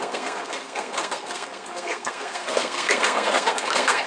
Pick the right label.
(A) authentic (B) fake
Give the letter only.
B